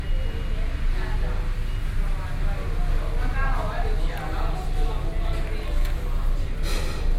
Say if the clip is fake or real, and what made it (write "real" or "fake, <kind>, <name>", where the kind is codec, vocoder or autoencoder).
real